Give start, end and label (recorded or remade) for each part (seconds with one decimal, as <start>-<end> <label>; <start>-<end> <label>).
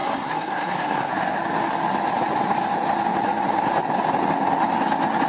0.0-1.1 remade; 1.1-5.3 recorded